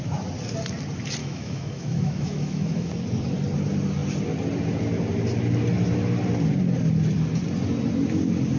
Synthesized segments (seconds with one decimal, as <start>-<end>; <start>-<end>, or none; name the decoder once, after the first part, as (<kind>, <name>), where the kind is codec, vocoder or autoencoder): 1.2-2.9 (autoencoder, DAC-VAE)